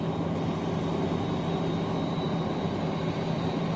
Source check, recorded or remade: recorded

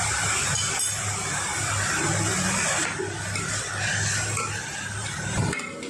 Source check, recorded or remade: recorded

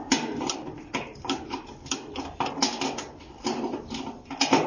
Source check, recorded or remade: recorded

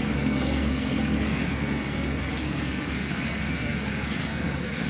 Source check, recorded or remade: remade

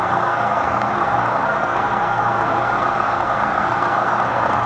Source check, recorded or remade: remade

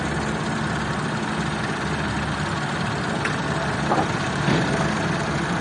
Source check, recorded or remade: recorded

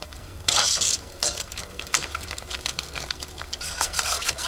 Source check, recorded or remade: remade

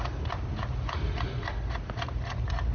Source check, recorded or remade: recorded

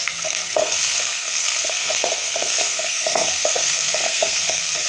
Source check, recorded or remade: remade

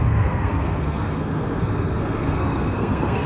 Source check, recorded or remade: remade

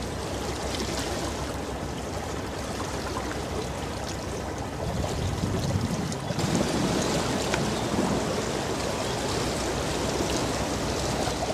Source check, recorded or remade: recorded